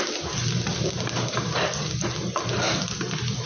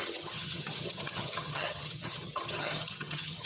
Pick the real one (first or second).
first